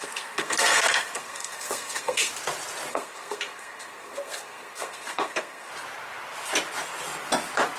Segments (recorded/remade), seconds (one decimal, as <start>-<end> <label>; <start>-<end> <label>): 0.0-2.3 remade; 2.3-2.9 recorded; 2.9-5.7 remade; 5.7-7.8 recorded